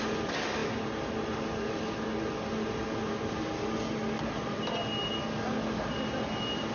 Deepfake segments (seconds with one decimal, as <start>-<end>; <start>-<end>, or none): none